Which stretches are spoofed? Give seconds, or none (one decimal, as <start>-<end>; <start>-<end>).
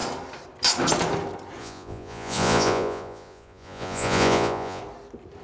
1.6-4.8